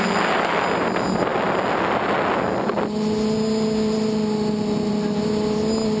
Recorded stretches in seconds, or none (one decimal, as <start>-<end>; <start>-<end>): 0.0-6.0